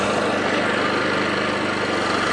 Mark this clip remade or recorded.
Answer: recorded